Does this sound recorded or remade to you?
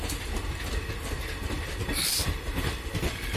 recorded